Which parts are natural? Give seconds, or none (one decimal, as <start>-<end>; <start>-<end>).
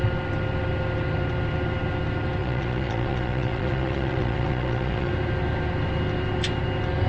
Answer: 0.0-2.4; 5.1-7.1